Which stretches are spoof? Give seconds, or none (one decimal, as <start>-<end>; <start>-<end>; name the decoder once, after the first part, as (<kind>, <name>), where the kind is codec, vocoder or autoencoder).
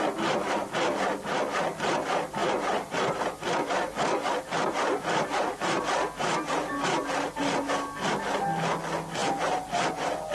2.4-3.2 (vocoder, BigVGAN v2)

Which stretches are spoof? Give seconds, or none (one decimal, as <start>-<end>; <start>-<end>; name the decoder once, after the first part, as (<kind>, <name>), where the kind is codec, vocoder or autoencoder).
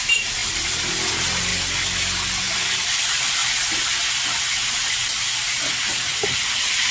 0.0-1.5 (vocoder, BigVGAN v2); 2.4-3.4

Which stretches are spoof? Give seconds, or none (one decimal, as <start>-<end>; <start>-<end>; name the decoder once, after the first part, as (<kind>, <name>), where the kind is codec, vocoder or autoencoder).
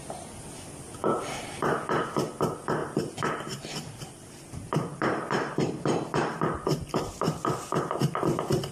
2.8-7.4 (vocoder, BigVGAN v2)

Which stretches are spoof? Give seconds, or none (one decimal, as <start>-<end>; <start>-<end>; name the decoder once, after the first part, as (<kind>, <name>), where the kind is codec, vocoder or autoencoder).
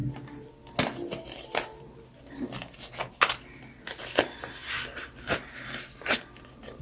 none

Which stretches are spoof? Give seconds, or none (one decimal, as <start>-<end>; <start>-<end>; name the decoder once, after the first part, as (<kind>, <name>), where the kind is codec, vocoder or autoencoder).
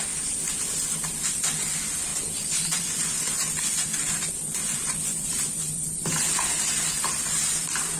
2.1-6.3 (vocoder, BigVGAN v2)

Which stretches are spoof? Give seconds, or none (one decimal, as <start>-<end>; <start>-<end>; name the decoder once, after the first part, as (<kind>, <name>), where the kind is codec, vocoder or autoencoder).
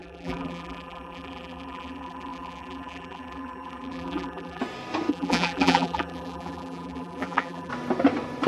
0.0-4.6 (vocoder, BigVGAN v2); 5.1-7.7